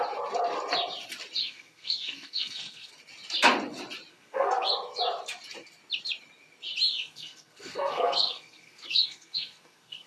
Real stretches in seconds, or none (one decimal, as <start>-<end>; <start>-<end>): 0.0-1.4; 2.9-4.1; 4.7-6.9